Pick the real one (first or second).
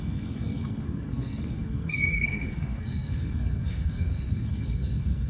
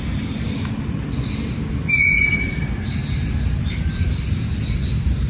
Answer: second